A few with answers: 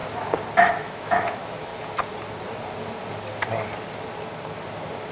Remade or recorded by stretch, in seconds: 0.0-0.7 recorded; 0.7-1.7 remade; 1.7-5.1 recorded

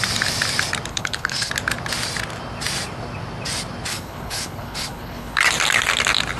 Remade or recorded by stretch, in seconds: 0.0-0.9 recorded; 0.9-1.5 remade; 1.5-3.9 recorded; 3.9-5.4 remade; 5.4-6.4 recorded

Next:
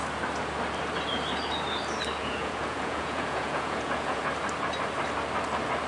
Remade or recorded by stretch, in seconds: 0.0-2.2 recorded; 2.2-4.2 remade; 4.2-5.9 recorded